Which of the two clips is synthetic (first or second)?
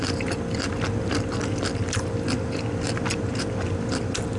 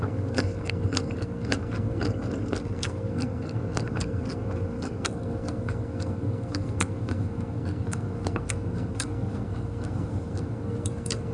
second